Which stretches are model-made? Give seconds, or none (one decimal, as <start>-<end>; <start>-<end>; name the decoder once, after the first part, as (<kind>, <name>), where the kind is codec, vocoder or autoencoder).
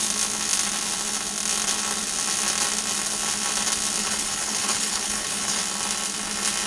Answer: 4.0-5.6 (codec, HILCodec)